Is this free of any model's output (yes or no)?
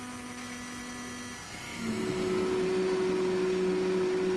yes